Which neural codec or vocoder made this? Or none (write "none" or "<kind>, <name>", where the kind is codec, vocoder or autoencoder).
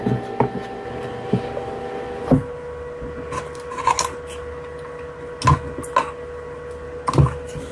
none